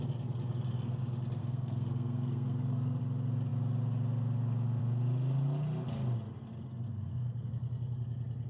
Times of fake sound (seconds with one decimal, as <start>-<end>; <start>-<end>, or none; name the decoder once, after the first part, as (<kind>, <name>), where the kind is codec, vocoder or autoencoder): 1.4-3.0 (codec, SNAC); 6.9-7.5